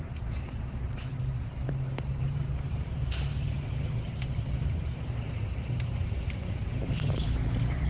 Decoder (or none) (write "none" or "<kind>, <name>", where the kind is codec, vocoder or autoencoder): vocoder, BigVGAN v2